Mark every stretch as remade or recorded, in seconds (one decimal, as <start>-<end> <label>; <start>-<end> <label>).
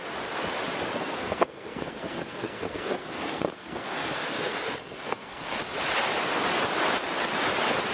0.0-0.9 recorded; 0.9-5.6 remade; 5.6-7.9 recorded